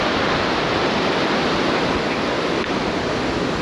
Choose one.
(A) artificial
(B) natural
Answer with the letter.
B